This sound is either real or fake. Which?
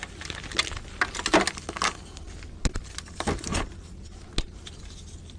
real